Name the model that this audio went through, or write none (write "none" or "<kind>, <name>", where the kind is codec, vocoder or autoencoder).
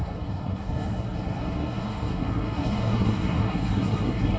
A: codec, SNAC